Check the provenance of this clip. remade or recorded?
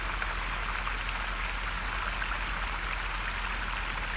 recorded